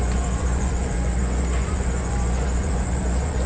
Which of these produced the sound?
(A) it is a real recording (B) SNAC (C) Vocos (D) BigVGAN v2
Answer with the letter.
C